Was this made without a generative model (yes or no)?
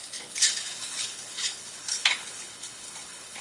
no